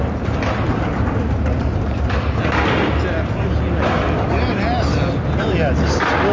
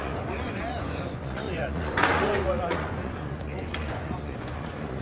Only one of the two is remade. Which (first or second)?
second